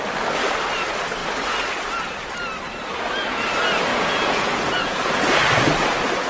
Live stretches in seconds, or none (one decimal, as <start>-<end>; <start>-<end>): 0.0-3.9; 5.2-6.3